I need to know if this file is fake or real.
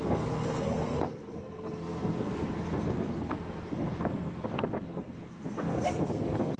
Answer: fake